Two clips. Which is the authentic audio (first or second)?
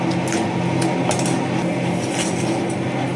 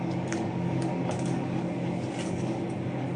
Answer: first